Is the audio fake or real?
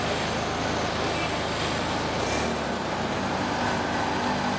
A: real